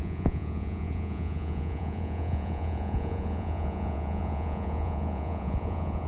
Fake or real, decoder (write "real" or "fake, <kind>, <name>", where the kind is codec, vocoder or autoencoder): fake, vocoder, Vocos